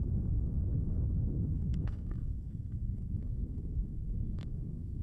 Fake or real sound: fake